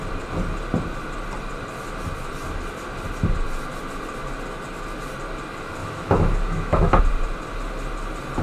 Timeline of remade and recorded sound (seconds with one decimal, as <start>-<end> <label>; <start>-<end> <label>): 0.0-5.8 recorded; 5.8-7.0 remade; 7.0-8.4 recorded

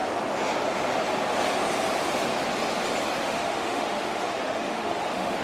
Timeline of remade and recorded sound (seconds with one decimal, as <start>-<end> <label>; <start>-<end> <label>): 0.0-3.2 recorded; 3.2-5.4 remade